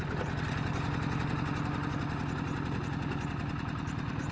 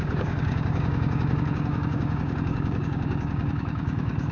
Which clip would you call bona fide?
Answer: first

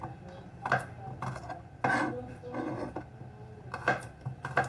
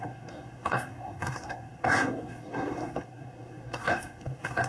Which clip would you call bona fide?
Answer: first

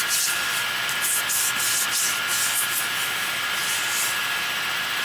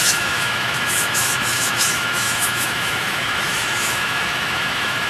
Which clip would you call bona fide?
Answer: first